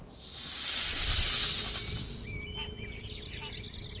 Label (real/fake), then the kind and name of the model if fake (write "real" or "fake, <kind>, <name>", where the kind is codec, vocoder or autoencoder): real